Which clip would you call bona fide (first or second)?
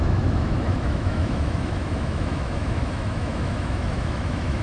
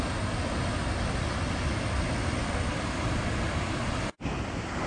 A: second